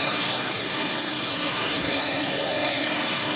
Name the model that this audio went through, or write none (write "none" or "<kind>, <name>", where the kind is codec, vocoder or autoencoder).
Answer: codec, SNAC